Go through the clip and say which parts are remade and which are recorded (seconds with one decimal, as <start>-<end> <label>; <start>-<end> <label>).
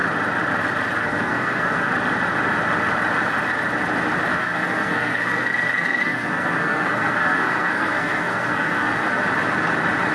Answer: 0.0-1.0 recorded; 1.0-1.9 remade; 1.9-4.3 recorded; 4.3-9.2 remade; 9.2-10.1 recorded